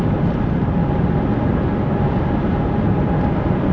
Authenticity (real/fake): real